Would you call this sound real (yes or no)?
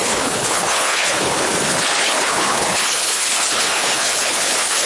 no